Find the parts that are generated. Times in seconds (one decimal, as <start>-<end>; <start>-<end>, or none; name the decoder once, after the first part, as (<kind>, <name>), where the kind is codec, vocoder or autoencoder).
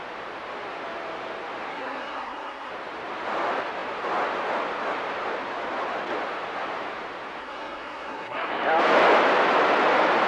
1.7-2.7 (codec, SNAC); 7.4-8.5